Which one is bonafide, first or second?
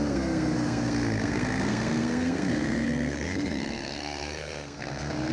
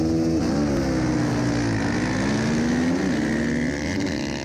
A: second